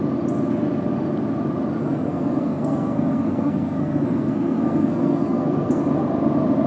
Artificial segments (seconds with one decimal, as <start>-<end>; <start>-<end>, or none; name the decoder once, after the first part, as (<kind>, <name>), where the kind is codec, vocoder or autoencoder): 1.8-5.8 (codec, SNAC)